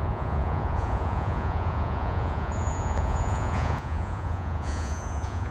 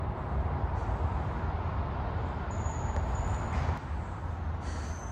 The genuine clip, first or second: second